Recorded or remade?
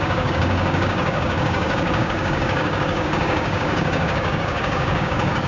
remade